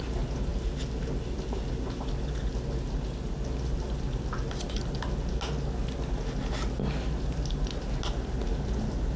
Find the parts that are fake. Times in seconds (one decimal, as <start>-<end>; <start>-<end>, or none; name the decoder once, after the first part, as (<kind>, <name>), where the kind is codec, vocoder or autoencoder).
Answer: none